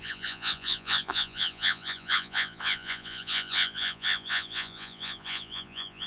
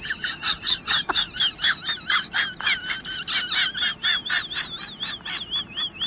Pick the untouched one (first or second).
second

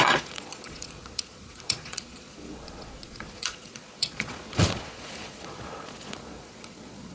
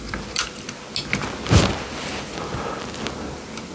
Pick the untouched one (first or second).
second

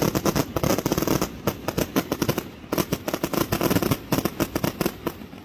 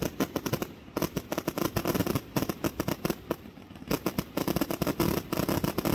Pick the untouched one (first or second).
first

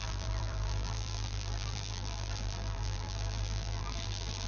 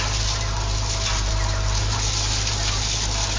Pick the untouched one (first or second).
second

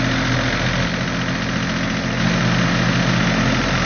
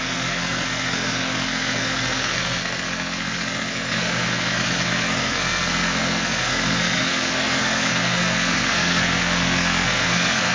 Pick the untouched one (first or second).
first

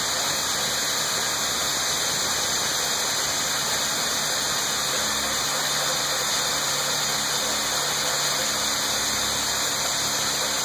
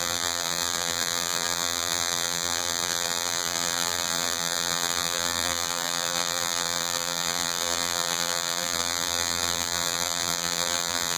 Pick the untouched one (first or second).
first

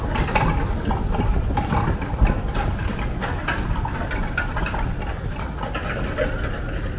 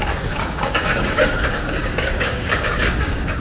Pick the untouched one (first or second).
first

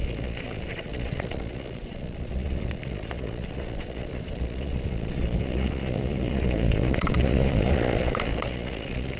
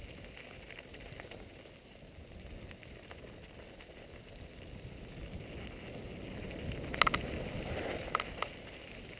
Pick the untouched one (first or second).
second